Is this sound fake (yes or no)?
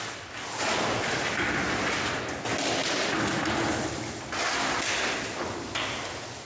no